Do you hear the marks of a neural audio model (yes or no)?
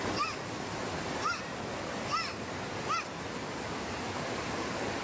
no